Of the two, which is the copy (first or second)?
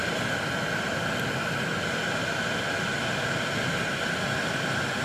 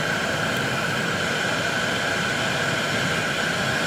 second